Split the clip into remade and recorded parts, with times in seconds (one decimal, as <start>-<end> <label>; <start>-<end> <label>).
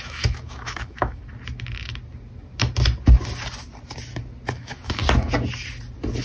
0.0-1.2 remade; 1.2-4.5 recorded; 4.5-5.0 remade; 5.0-6.2 recorded